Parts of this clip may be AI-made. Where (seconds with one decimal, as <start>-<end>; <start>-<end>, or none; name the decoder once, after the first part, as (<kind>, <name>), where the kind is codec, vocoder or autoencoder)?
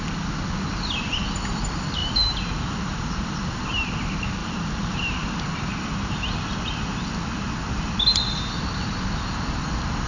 2.0-3.9 (vocoder, BigVGAN v2); 4.4-6.6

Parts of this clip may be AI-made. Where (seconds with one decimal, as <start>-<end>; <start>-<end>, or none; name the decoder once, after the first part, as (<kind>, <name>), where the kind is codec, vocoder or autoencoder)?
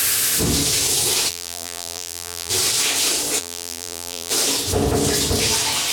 1.3-2.5 (vocoder, BigVGAN v2); 3.4-4.3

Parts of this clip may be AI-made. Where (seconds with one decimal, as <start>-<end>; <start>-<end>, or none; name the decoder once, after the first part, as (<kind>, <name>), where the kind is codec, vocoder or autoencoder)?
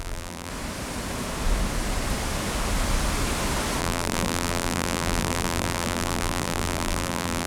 0.0-0.5 (vocoder, BigVGAN v2); 3.8-7.5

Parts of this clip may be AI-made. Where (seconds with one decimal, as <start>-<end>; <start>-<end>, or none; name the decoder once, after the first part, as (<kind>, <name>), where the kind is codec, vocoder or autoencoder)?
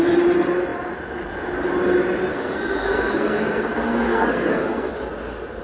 2.3-4.9 (codec, SNAC)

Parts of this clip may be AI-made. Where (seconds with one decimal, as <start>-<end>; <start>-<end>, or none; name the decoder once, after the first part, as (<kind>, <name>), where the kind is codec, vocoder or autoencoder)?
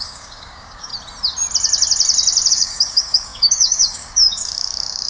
0.0-0.9 (codec, DAC); 2.5-5.1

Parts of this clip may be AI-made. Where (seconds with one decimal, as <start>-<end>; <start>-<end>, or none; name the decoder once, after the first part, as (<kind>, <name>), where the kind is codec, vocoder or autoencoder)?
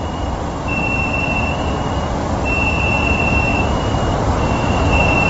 3.5-4.3 (vocoder, BigVGAN v2)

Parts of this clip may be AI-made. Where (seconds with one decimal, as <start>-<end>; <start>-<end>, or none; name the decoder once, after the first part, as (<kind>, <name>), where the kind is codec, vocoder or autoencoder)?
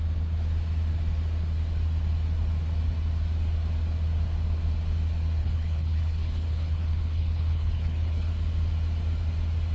5.4-8.3 (codec, HILCodec)